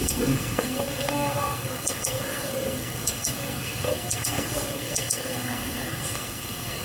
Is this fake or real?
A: fake